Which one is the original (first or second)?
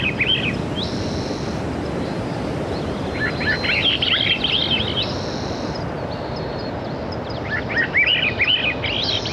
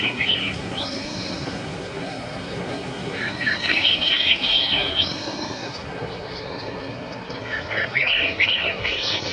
first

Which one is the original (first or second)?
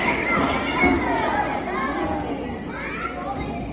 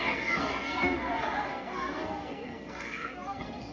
first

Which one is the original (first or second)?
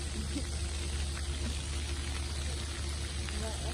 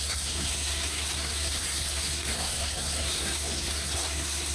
first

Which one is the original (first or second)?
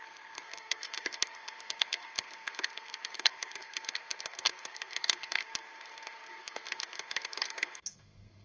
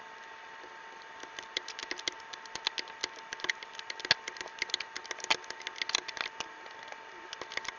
second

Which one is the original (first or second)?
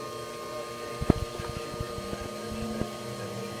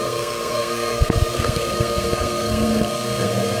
first